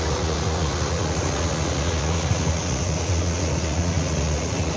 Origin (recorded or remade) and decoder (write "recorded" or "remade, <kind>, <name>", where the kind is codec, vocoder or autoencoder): remade, vocoder, Vocos